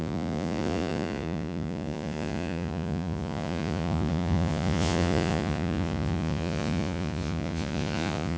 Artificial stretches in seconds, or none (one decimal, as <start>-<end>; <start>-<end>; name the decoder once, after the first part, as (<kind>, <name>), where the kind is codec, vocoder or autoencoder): 0.0-8.4 (vocoder, Vocos)